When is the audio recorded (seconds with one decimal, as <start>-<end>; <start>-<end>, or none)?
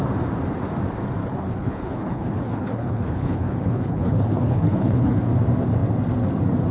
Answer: 0.0-1.2; 5.2-6.7